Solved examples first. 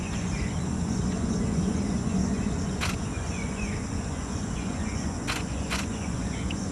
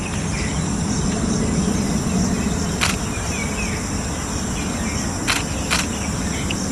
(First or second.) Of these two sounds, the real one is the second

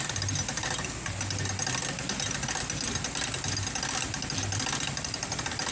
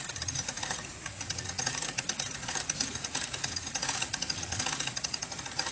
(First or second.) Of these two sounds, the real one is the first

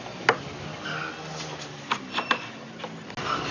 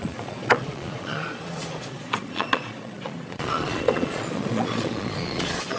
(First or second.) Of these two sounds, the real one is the first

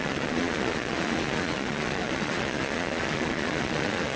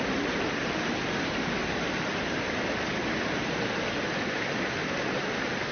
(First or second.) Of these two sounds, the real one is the second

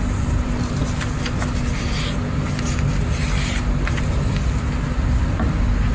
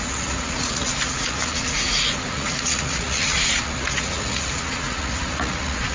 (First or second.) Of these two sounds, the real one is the first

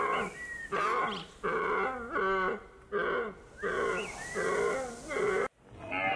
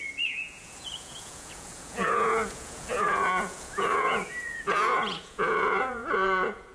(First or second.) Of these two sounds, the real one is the first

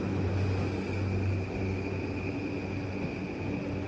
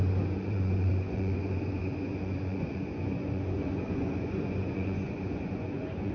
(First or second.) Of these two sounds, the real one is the first